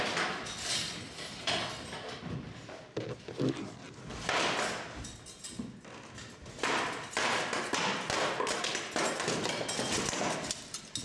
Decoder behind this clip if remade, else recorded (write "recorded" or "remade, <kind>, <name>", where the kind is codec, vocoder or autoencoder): recorded